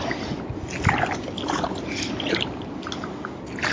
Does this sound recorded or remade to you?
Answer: recorded